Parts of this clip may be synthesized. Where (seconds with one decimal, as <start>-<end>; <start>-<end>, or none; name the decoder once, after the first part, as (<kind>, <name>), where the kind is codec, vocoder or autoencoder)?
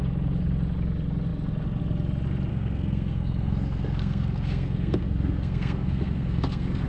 2.5-6.9 (codec, SNAC)